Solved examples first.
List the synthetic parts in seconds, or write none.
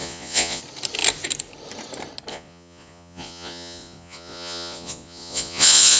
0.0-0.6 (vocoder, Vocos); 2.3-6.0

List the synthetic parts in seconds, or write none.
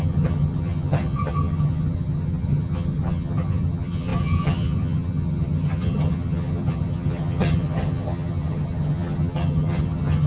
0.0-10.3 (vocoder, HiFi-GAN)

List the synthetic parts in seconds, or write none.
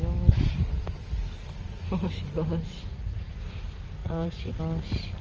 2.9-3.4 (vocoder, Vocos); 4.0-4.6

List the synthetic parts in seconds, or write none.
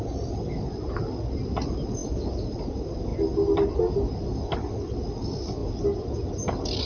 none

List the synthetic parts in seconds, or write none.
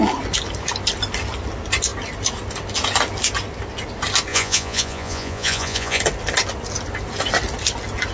4.3-6.0 (vocoder, Vocos)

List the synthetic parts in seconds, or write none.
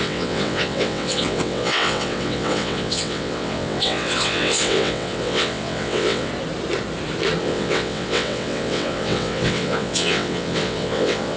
0.0-6.3 (vocoder, WaveNeXt); 7.4-11.4